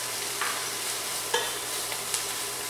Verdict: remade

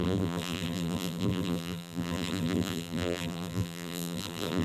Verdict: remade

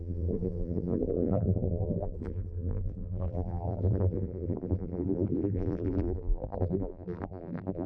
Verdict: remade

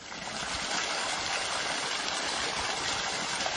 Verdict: remade